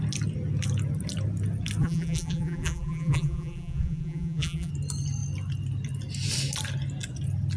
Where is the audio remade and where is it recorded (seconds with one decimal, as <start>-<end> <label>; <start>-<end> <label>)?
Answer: 0.0-1.8 recorded; 1.8-4.7 remade; 4.7-7.6 recorded